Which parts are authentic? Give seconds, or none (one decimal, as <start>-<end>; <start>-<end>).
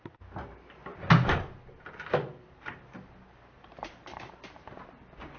0.0-5.4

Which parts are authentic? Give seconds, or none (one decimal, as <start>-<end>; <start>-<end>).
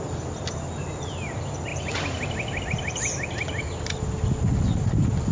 0.0-5.3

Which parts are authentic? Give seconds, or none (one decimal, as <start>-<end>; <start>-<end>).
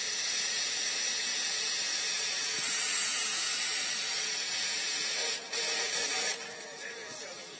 none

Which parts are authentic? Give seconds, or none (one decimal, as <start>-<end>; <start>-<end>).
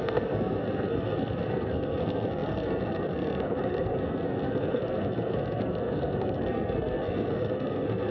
none